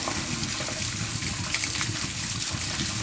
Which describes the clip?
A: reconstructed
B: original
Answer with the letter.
B